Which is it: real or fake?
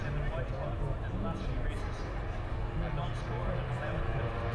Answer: real